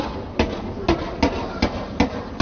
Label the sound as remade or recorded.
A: recorded